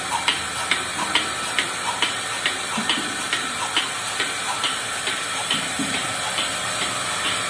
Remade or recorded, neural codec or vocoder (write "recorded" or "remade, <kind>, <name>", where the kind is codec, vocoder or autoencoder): remade, vocoder, BigVGAN v2